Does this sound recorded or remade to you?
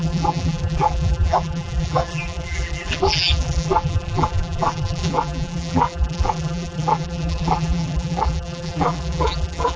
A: remade